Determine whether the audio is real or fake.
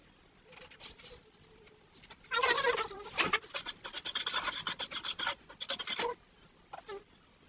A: real